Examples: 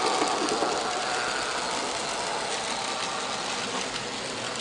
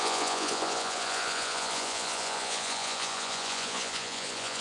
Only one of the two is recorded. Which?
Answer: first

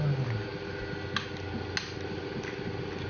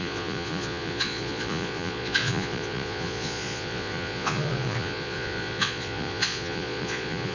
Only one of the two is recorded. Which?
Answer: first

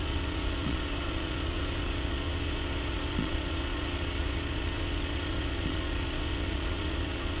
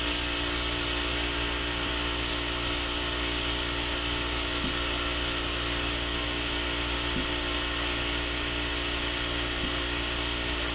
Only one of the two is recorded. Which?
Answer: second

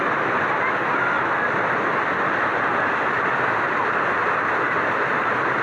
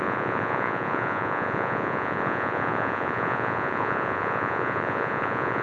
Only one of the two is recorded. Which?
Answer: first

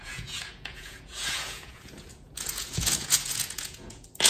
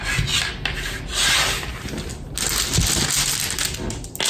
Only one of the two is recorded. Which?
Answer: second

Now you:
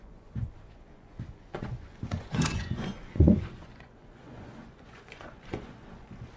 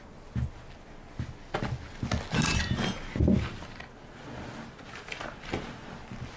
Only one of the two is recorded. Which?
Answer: second